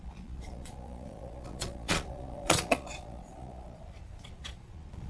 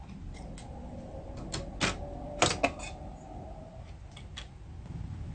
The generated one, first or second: first